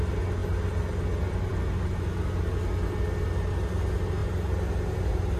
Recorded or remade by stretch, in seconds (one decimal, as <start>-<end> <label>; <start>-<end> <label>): 0.0-5.4 recorded

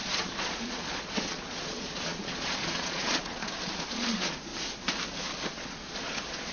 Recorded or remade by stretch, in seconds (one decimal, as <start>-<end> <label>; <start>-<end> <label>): 0.0-4.5 remade; 4.5-5.5 recorded; 5.5-6.5 remade

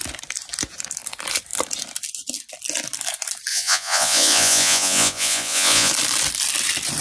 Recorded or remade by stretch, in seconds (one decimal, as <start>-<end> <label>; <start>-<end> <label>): 0.0-3.5 recorded; 3.5-5.9 remade; 5.9-7.0 recorded

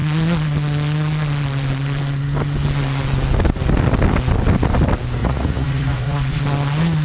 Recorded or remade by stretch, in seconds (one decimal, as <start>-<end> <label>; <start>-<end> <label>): 0.0-5.2 recorded; 5.2-6.4 remade; 6.4-7.0 recorded